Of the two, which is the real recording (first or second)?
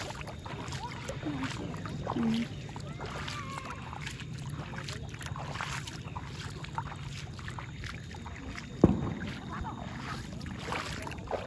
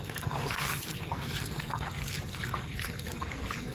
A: first